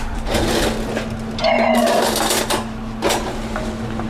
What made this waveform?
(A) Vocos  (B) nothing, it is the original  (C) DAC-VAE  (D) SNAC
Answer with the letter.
B